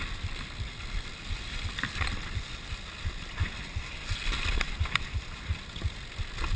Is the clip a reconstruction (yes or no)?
no